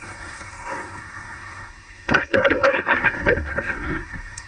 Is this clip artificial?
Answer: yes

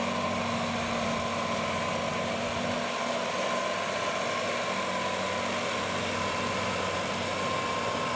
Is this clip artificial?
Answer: no